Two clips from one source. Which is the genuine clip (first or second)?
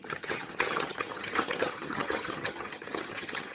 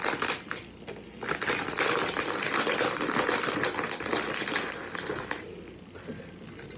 second